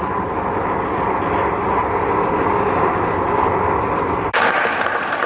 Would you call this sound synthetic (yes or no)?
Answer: no